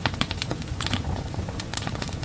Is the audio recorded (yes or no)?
no